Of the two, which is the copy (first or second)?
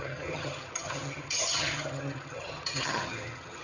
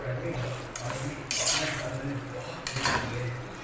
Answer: first